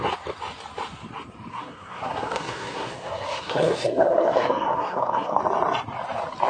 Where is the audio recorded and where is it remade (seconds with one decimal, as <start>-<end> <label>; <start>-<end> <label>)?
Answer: 0.0-1.5 recorded; 1.5-5.4 remade; 5.4-6.5 recorded

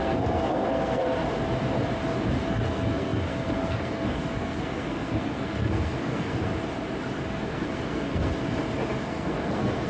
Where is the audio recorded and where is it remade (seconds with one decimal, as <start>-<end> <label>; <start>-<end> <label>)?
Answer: 0.0-1.2 remade; 1.2-2.5 recorded; 2.5-6.5 remade; 6.5-7.3 recorded; 7.3-8.3 remade; 8.3-9.1 recorded; 9.1-9.9 remade

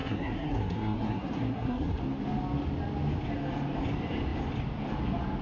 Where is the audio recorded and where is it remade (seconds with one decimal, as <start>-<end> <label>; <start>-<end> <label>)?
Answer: 0.0-2.0 remade; 2.0-5.4 recorded

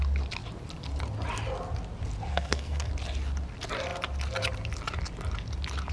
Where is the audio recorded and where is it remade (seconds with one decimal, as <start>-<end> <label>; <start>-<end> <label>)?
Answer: 0.0-2.3 recorded; 2.3-2.9 remade; 2.9-5.9 recorded

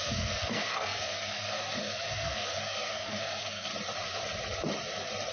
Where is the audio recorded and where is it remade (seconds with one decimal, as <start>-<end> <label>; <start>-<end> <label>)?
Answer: 0.0-3.7 remade; 3.7-5.3 recorded

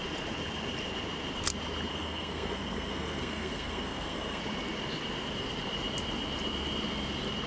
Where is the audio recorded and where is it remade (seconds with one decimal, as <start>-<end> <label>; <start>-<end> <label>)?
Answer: 0.0-1.9 recorded; 1.9-4.4 remade; 4.4-7.5 recorded

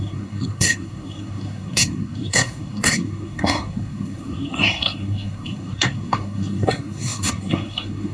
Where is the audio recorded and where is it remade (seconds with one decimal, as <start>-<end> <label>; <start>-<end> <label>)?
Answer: 0.0-8.1 remade

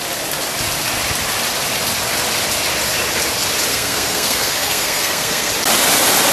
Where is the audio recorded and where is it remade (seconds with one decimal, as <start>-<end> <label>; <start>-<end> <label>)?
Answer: 0.0-3.7 recorded; 3.7-5.5 remade; 5.5-6.3 recorded